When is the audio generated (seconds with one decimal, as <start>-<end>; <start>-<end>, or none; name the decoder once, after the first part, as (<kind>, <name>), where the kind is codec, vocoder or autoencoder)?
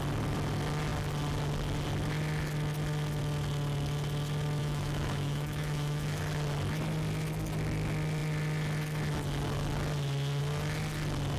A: 4.6-6.2 (autoencoder, DAC-VAE)